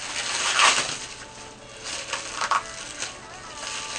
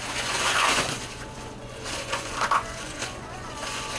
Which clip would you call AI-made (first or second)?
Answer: second